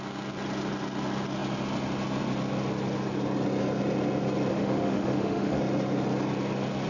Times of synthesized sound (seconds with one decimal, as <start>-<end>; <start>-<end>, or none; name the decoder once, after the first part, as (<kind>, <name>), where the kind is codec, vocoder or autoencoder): 4.5-5.6 (autoencoder, DAC-VAE)